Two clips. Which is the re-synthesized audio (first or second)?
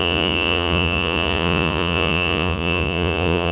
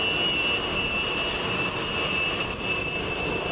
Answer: first